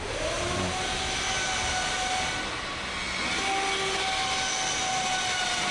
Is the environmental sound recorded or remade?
recorded